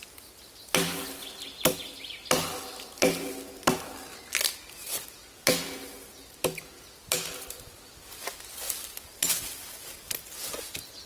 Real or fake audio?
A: real